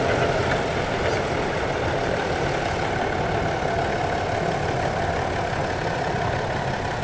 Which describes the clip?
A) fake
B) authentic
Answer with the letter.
B